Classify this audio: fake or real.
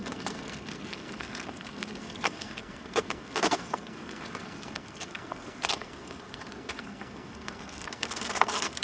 fake